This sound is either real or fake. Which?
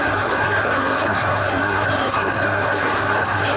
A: fake